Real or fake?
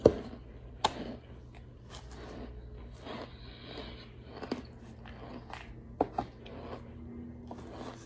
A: real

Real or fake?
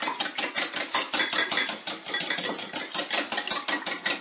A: real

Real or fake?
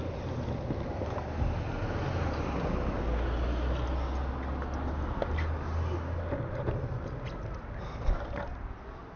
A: real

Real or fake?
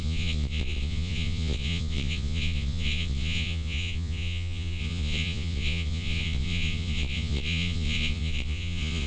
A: fake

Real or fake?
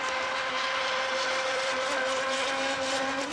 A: fake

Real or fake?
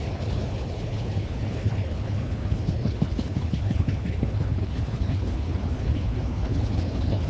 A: fake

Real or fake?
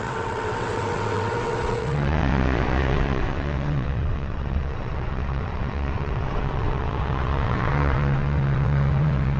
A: fake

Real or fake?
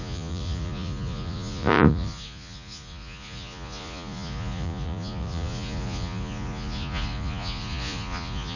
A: fake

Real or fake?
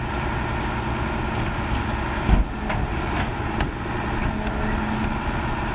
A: real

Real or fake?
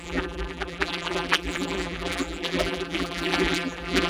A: fake